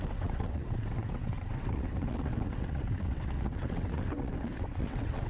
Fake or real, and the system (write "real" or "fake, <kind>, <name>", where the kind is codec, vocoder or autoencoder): fake, vocoder, WaveNeXt